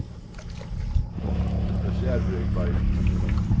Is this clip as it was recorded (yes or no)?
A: yes